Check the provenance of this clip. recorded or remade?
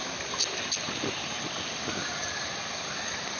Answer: recorded